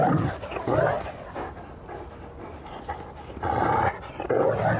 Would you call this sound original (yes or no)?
yes